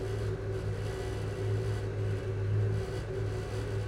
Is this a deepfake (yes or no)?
no